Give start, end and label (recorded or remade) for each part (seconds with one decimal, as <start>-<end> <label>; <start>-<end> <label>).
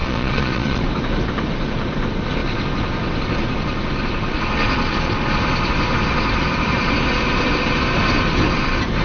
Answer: 0.0-0.8 remade; 0.8-9.0 recorded